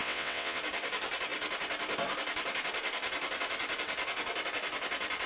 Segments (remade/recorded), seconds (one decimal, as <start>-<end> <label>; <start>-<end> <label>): 0.0-0.6 remade; 0.6-5.3 recorded